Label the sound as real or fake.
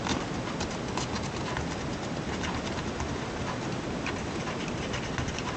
real